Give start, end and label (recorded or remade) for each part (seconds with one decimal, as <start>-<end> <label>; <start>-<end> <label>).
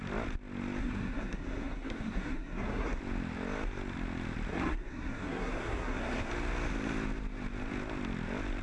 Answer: 0.0-0.8 recorded; 0.8-3.0 remade; 3.0-4.5 recorded; 4.5-6.3 remade; 6.3-8.6 recorded